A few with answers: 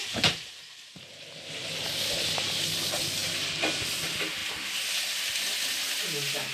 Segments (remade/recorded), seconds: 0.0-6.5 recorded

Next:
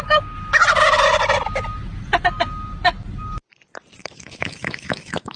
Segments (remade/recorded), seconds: 0.0-4.0 recorded; 4.0-5.4 remade

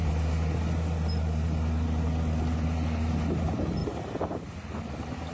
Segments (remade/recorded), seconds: 0.0-5.3 recorded

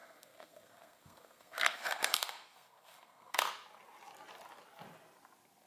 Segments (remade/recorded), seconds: 0.0-3.4 remade; 3.4-5.7 recorded

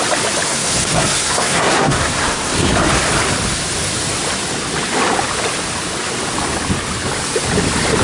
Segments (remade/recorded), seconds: 0.0-0.5 recorded; 0.5-2.7 remade; 2.7-8.0 recorded

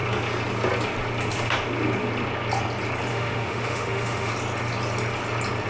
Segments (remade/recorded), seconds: 0.0-3.1 recorded; 3.1-4.3 remade; 4.3-5.7 recorded